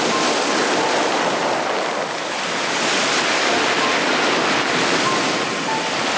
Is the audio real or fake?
real